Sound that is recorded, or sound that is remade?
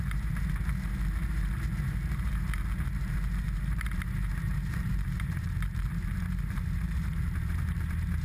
remade